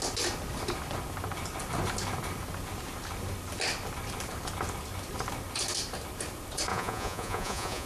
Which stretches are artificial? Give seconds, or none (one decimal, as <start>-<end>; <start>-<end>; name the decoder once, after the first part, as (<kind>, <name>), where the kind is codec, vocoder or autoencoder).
6.7-7.9 (vocoder, Vocos)